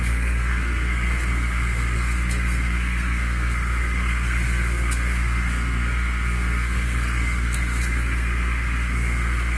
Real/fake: fake